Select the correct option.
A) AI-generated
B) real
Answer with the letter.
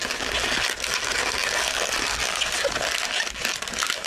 B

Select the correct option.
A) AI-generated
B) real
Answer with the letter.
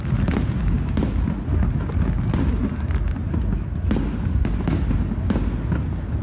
B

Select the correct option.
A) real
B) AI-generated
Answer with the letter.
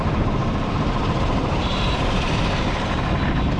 B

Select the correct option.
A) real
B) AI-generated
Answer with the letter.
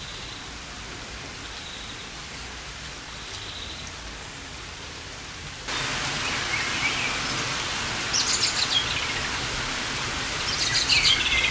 A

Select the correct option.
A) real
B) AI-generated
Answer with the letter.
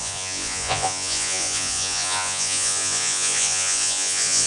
B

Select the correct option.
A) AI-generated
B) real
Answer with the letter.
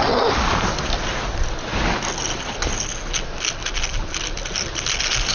B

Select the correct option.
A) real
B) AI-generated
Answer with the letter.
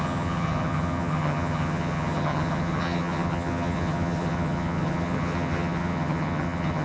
B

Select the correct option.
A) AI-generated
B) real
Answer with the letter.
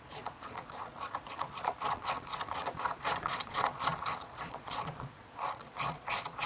A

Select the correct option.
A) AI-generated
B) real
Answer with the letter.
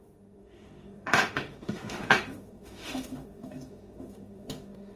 A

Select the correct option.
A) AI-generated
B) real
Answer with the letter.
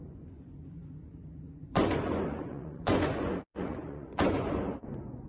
A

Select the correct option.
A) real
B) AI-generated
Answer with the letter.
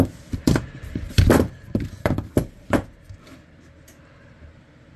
B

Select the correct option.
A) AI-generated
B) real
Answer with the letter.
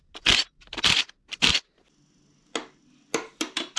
B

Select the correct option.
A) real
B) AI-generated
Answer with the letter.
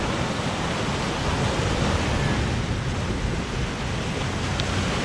A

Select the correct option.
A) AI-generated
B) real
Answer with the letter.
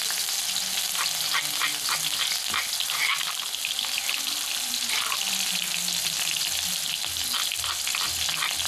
B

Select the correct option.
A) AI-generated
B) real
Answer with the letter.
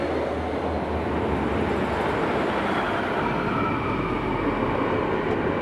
B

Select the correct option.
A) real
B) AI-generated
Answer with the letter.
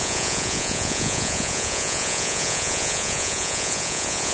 B